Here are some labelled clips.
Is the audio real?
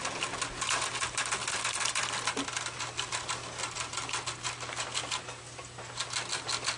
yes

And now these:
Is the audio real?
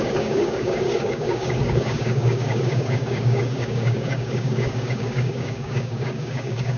no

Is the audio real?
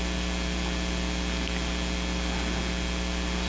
yes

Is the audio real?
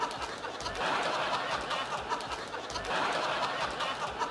yes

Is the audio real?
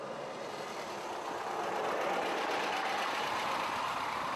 yes